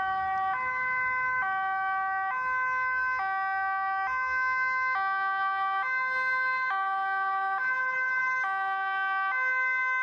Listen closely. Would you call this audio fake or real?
real